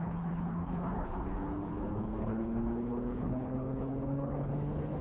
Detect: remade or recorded remade